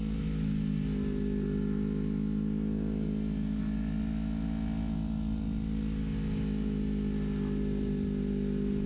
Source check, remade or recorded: recorded